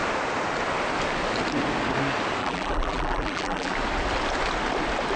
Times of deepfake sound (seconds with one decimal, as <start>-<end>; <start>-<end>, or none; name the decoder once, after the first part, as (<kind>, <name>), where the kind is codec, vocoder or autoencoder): 2.4-3.7 (vocoder, BigVGAN v2)